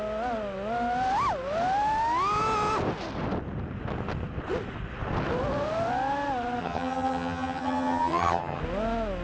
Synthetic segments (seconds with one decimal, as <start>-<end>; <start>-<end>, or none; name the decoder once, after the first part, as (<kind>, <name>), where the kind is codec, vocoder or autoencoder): 6.6-8.6 (vocoder, HiFi-GAN)